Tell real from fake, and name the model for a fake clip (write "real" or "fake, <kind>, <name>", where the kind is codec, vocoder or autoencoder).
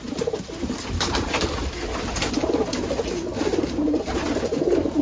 real